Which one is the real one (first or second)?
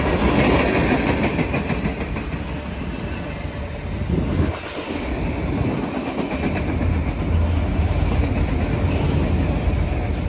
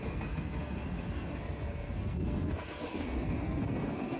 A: first